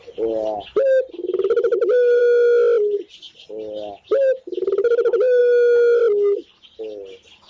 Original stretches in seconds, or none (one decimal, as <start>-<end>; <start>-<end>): 0.0-7.5